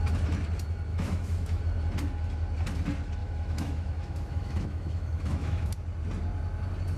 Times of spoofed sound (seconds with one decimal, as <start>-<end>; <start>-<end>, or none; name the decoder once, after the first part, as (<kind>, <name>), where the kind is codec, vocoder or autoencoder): 0.9-1.6 (autoencoder, DAC-VAE); 3.2-5.7